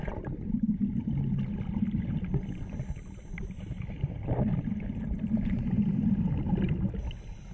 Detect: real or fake real